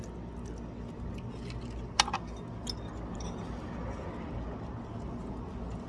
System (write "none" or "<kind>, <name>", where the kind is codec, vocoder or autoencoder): none